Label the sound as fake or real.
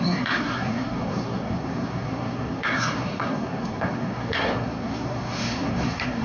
fake